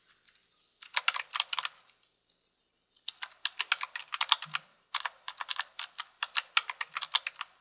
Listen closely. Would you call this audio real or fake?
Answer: real